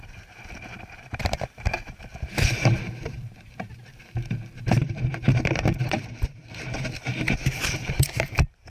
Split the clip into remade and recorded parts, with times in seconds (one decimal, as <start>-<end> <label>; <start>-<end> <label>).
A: 0.0-6.4 remade; 6.4-7.1 recorded; 7.1-8.7 remade